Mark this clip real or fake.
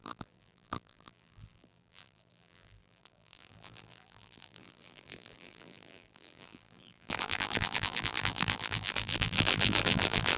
fake